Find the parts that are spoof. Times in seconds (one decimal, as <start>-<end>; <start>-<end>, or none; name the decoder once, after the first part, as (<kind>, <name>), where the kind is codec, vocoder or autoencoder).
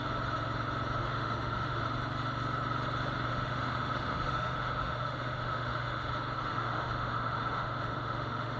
1.0-1.8 (autoencoder, DAC-VAE); 3.3-6.1; 6.5-8.6